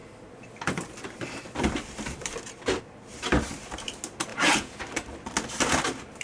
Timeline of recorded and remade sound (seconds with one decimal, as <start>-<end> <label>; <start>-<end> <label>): 0.0-4.3 recorded; 4.3-4.8 remade; 4.8-6.2 recorded